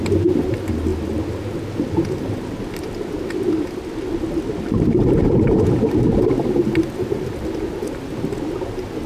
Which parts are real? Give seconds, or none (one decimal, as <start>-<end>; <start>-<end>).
0.0-9.1